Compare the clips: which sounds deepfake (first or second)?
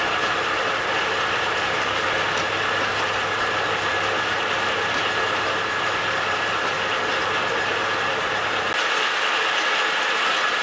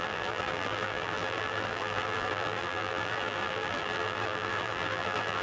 second